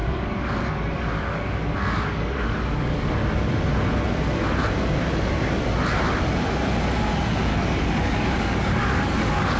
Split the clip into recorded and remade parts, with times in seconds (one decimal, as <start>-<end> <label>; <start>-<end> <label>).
0.0-3.1 remade; 3.1-7.5 recorded; 7.5-9.6 remade